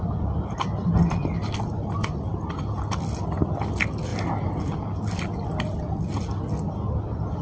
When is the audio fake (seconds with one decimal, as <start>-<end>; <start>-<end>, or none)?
none